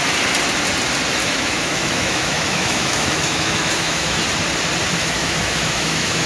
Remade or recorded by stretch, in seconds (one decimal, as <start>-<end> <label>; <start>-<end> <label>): 0.0-1.2 recorded; 1.2-4.2 remade; 4.2-5.0 recorded; 5.0-6.3 remade